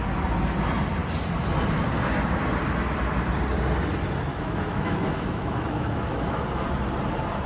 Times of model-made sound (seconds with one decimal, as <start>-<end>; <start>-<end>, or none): 4.3-6.4